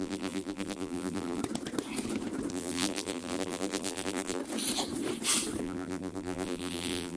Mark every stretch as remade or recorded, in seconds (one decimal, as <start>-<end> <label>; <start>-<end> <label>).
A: 0.0-1.4 remade; 1.4-2.5 recorded; 2.5-4.4 remade; 4.4-5.6 recorded; 5.6-7.2 remade